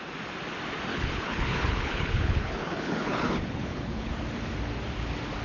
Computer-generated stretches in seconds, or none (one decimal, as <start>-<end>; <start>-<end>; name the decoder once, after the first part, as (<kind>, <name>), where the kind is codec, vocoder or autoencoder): 0.9-4.1 (codec, HILCodec)